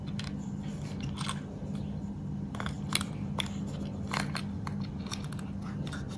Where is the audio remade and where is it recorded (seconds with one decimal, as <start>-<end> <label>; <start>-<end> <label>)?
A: 0.0-6.2 recorded

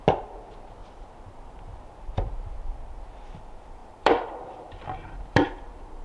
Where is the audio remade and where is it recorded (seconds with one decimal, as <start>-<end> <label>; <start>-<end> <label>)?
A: 0.0-0.8 recorded; 0.8-1.6 remade; 1.6-3.8 recorded; 3.8-6.0 remade

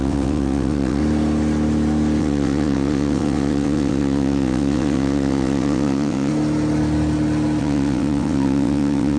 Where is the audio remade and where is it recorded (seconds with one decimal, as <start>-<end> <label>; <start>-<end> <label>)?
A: 0.0-1.0 remade; 1.0-2.2 recorded; 2.2-6.3 remade; 6.3-7.6 recorded; 7.6-9.2 remade

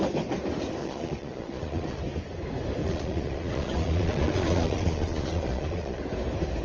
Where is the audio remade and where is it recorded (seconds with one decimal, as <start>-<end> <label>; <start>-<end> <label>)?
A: 0.0-0.8 recorded; 0.8-2.0 remade; 2.0-2.8 recorded; 2.8-6.0 remade; 6.0-6.6 recorded

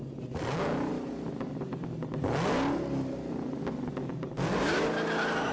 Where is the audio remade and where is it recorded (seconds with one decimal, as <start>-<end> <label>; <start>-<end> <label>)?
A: 0.0-5.5 recorded